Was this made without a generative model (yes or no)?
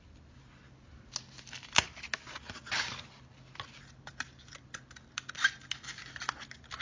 yes